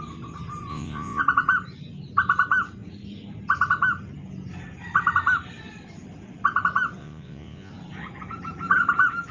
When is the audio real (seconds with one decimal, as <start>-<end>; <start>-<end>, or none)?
0.0-0.7; 1.2-7.0; 7.7-9.3